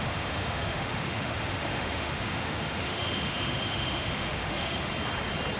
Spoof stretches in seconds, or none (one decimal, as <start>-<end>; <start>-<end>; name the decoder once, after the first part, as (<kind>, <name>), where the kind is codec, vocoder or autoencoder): 0.0-4.9 (autoencoder, DAC-VAE)